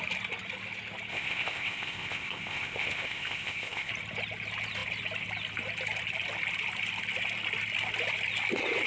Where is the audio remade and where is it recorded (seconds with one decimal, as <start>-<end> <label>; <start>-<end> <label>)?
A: 0.0-1.1 recorded; 1.1-3.9 remade; 3.9-8.9 recorded